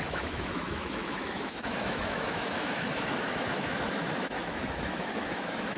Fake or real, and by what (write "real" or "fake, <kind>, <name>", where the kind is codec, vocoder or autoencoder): fake, autoencoder, DAC-VAE